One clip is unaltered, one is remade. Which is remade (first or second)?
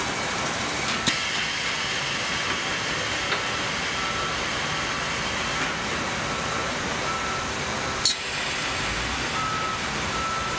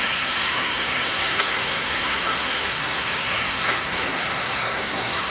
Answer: second